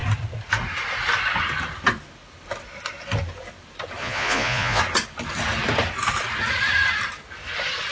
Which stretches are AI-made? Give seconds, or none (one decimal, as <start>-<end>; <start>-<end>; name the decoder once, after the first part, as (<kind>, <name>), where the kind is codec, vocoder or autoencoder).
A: 4.0-4.8 (vocoder, Vocos)